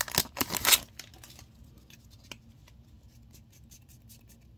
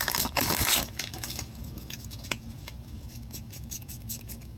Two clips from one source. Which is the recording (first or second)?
first